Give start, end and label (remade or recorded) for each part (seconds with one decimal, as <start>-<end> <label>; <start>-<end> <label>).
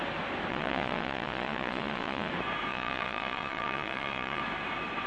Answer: 0.0-0.5 recorded; 0.5-2.3 remade; 2.3-2.7 recorded; 2.7-4.4 remade; 4.4-5.1 recorded